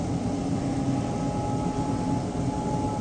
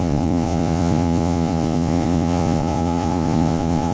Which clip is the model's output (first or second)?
second